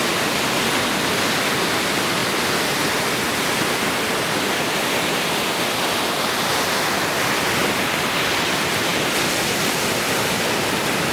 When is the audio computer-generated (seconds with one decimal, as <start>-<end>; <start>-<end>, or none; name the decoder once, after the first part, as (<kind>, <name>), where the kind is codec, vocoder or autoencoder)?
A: none